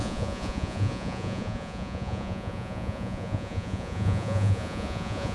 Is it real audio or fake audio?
fake